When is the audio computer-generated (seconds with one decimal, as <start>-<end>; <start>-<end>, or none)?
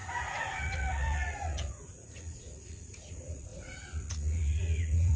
0.0-5.2